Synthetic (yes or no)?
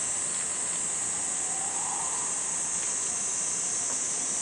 no